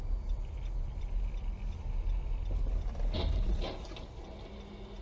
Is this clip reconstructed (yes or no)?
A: no